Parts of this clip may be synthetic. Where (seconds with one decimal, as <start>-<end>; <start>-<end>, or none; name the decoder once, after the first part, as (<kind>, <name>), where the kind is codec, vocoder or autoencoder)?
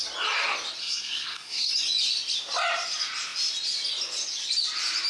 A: 0.8-1.7 (codec, SNAC)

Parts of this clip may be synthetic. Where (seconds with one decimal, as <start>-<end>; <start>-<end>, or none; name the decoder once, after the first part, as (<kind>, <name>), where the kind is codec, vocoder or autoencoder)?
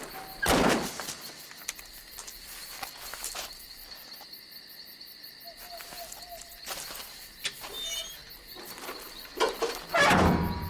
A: none